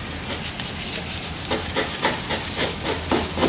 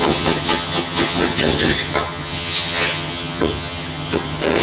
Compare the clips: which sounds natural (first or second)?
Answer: first